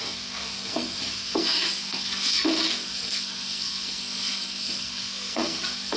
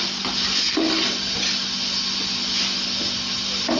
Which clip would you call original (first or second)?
second